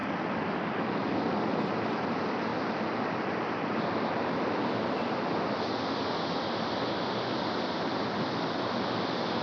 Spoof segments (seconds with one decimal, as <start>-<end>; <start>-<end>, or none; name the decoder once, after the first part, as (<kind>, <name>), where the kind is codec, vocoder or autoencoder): 2.5-5.0 (vocoder, BigVGAN v2)